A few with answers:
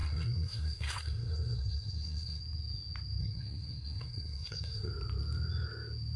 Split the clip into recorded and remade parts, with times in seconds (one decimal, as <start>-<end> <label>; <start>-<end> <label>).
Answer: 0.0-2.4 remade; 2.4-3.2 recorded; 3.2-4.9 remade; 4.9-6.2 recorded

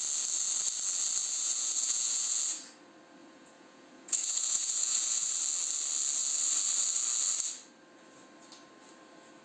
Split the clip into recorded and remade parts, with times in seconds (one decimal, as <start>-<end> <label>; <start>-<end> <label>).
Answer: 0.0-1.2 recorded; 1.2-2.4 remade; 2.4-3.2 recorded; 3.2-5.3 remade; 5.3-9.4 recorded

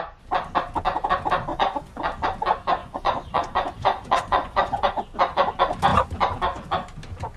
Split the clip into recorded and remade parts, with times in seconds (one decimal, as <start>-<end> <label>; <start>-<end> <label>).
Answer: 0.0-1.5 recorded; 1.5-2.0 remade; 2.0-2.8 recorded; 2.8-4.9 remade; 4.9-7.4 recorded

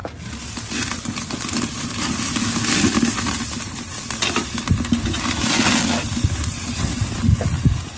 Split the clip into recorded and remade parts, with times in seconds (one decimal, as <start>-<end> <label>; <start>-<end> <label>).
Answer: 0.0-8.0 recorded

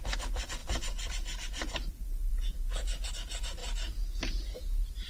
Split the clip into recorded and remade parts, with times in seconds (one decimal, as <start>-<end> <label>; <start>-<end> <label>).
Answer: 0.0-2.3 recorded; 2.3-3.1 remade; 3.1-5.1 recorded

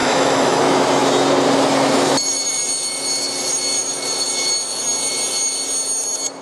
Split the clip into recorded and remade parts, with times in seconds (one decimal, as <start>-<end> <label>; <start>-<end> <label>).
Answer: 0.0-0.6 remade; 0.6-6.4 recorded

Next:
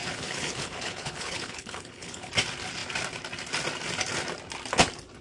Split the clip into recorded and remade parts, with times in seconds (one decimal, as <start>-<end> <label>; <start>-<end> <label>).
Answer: 0.0-2.3 remade; 2.3-5.2 recorded

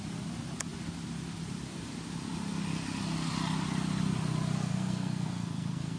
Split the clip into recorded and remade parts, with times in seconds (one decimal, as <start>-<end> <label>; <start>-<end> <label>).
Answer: 0.0-4.7 recorded; 4.7-6.0 remade